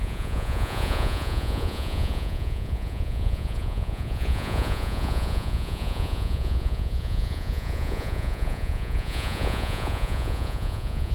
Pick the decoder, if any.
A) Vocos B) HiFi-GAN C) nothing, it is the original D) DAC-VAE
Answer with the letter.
A